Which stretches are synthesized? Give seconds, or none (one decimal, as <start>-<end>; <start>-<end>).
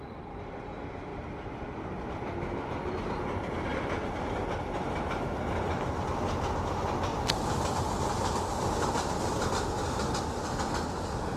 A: 1.1-3.0; 3.7-4.2; 7.1-9.5